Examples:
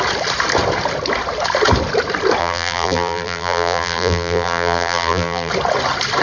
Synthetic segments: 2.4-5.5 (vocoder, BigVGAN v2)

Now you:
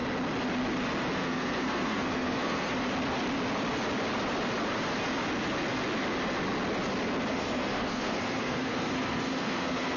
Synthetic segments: 1.2-2.7 (codec, SNAC); 7.3-10.0

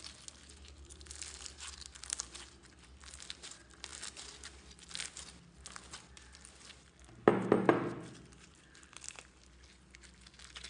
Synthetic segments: none

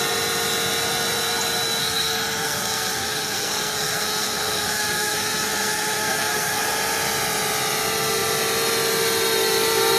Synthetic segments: 1.8-6.6 (codec, SNAC)